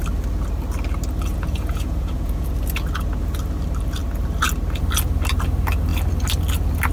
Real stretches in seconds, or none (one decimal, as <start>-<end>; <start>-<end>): 0.0-1.3; 2.5-6.9